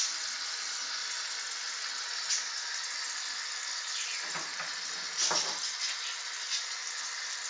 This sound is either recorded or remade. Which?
recorded